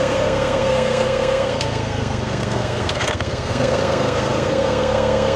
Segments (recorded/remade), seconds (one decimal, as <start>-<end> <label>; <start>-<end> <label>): 0.0-5.4 remade